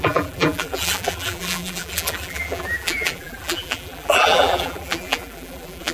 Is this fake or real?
fake